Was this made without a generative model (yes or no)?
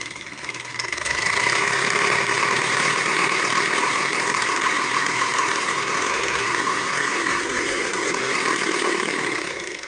no